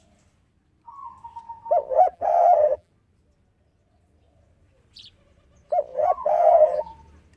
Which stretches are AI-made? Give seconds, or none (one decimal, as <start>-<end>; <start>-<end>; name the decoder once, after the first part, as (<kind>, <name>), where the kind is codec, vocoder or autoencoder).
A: 1.9-2.9 (vocoder, BigVGAN v2); 5.9-6.9

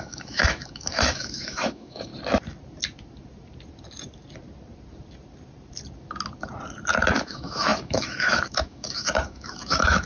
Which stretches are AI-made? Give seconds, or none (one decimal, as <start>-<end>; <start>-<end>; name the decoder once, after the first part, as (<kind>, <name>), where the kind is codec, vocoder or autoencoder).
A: 0.0-2.1 (autoencoder, DAC-VAE); 7.2-10.1

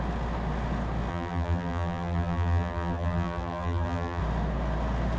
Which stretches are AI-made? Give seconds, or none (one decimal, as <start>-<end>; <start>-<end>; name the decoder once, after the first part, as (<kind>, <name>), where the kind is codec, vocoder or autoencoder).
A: 1.1-4.2 (vocoder, BigVGAN v2)

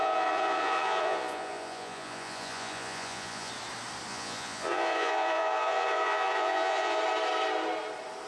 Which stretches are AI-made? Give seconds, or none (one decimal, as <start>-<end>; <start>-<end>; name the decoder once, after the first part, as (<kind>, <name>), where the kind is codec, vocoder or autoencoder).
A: 0.0-3.5 (vocoder, Vocos); 4.1-7.0

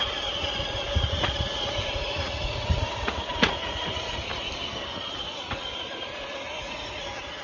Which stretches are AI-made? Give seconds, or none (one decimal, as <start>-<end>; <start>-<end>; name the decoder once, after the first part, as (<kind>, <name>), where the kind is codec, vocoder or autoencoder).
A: 0.0-4.3 (vocoder, Vocos); 5.1-7.4

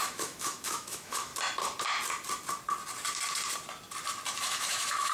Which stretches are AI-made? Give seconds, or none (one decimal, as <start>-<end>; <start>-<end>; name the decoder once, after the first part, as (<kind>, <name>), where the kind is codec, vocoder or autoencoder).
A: 0.0-1.3 (autoencoder, DAC-VAE); 4.4-5.1

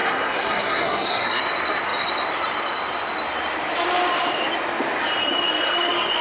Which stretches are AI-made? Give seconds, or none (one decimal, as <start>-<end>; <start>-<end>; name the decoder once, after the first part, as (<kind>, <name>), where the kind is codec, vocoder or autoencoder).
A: 0.0-1.4 (codec, SNAC)